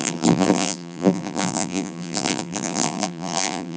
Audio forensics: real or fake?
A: fake